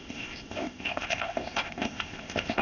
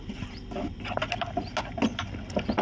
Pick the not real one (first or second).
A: first